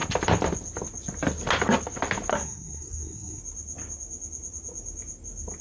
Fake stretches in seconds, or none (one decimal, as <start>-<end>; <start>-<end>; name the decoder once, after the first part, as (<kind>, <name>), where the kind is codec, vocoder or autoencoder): 2.3-3.4 (codec, SNAC)